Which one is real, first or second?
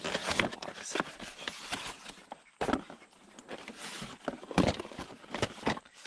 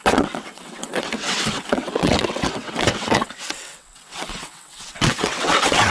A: first